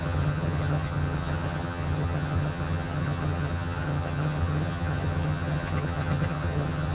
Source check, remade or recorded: remade